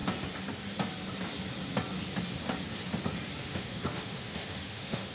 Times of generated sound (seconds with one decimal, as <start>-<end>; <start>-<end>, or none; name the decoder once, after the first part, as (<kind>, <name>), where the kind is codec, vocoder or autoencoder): 3.4-5.1 (autoencoder, DAC-VAE)